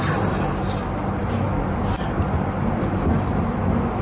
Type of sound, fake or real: real